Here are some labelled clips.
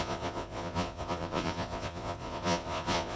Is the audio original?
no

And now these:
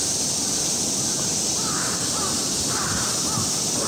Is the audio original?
yes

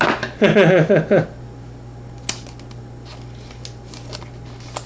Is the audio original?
yes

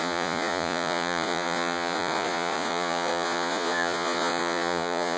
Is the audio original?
no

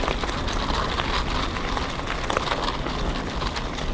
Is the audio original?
yes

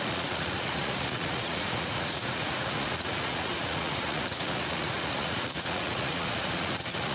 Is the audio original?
no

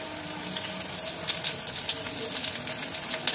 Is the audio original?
yes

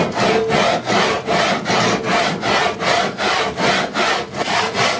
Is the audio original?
yes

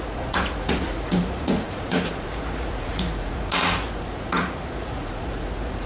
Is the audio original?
no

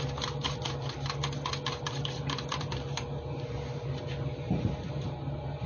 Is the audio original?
no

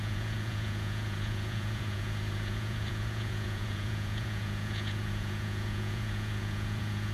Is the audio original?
no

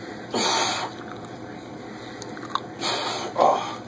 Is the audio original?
yes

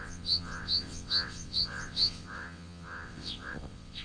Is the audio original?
no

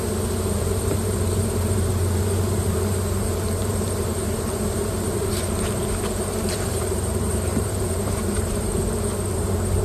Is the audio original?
no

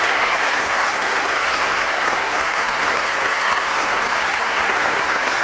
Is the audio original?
no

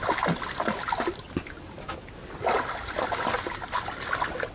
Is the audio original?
yes